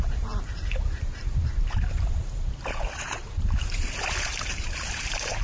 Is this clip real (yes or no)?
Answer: no